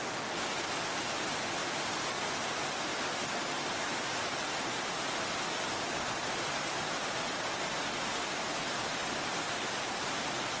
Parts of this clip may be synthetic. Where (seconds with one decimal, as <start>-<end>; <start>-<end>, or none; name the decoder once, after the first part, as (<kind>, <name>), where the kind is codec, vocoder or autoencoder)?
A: none